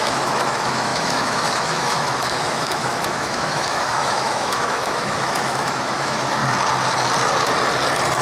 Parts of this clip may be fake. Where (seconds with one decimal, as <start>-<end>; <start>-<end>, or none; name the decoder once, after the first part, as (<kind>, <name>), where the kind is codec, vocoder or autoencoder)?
0.0-6.4 (autoencoder, DAC-VAE)